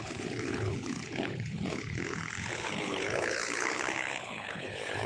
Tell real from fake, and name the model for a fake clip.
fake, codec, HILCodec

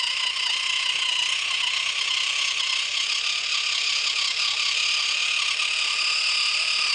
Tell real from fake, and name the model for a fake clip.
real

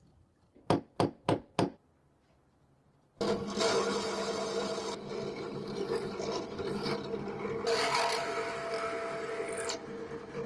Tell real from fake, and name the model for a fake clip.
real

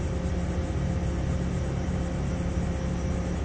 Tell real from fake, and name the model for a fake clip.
real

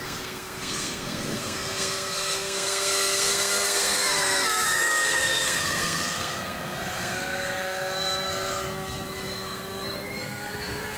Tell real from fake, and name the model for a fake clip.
fake, codec, SNAC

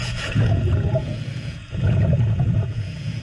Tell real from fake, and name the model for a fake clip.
fake, vocoder, Vocos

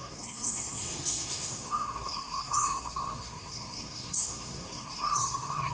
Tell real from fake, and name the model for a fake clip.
fake, codec, SNAC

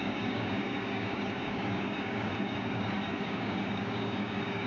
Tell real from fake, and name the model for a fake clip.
fake, codec, DAC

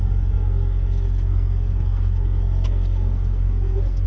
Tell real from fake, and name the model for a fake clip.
fake, codec, SNAC